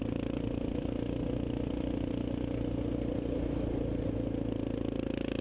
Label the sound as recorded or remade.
recorded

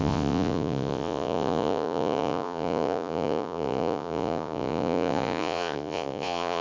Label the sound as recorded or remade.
remade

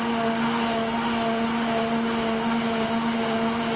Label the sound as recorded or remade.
recorded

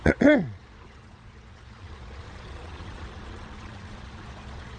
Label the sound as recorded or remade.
remade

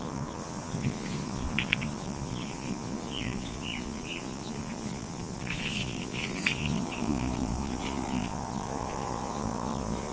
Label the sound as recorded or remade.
remade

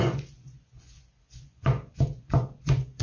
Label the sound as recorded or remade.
remade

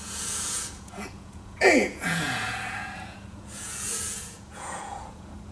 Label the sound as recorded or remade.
remade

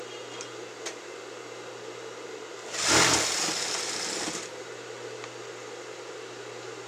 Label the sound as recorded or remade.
recorded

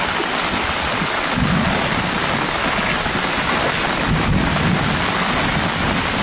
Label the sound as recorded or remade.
recorded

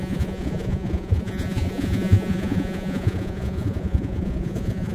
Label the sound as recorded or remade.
remade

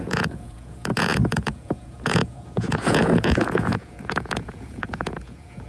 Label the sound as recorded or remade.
remade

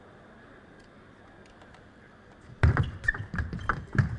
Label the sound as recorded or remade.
recorded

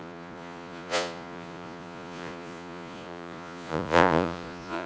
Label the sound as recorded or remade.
remade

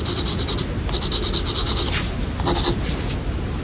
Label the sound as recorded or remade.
recorded